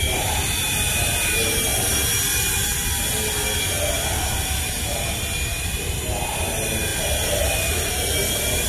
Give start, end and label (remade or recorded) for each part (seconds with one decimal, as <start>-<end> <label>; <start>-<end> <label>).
0.0-1.7 remade; 1.7-4.3 recorded; 4.3-6.9 remade; 6.9-8.7 recorded